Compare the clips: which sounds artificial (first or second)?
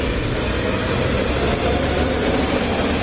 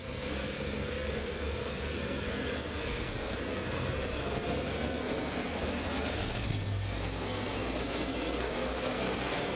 second